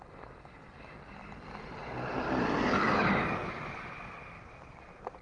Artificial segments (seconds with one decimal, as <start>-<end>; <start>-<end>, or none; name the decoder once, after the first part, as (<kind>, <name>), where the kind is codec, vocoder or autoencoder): 1.2-1.7 (vocoder, BigVGAN v2); 3.4-4.8